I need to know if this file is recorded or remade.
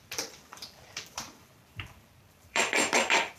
remade